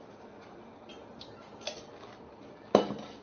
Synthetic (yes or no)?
no